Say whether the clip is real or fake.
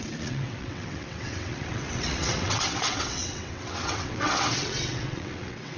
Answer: fake